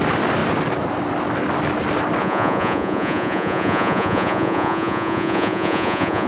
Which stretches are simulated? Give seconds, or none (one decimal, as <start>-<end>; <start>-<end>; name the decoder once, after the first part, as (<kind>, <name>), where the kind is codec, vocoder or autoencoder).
2.2-6.3 (vocoder, Vocos)

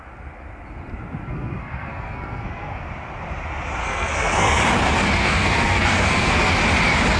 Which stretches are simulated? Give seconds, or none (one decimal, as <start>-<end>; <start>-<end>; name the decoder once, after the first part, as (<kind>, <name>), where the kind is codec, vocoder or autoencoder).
1.2-2.9 (codec, SNAC); 3.8-4.6; 5.2-6.5

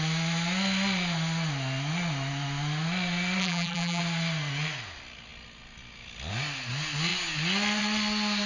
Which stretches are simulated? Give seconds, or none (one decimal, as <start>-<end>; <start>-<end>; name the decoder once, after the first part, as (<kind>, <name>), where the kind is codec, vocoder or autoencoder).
3.4-4.0 (vocoder, BigVGAN v2)

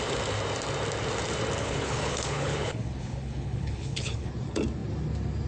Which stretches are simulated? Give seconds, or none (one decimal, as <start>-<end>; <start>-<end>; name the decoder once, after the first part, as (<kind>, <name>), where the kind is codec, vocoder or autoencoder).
1.6-4.3 (codec, HILCodec)